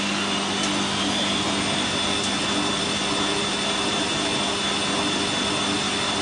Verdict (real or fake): real